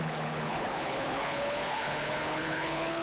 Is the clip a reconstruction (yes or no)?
yes